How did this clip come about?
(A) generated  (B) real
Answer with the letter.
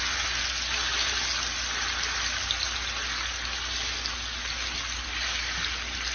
B